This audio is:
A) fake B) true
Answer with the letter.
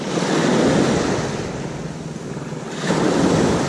B